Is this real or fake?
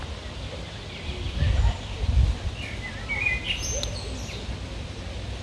real